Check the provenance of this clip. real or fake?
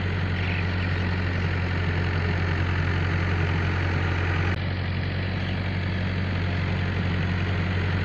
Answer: real